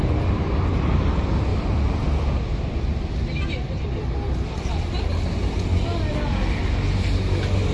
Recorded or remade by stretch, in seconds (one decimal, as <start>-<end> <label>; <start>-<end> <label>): 0.0-7.7 recorded